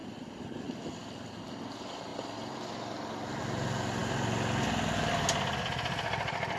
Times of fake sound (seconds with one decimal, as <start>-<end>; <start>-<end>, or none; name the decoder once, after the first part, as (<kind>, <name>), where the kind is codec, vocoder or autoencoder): none